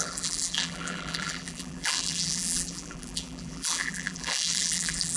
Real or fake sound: fake